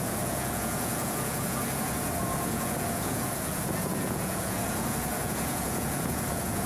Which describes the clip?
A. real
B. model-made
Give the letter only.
B